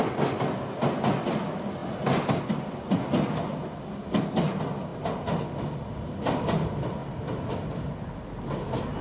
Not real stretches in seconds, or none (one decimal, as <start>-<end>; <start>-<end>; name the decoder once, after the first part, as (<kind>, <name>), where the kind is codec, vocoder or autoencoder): none